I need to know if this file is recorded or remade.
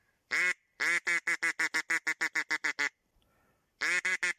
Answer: recorded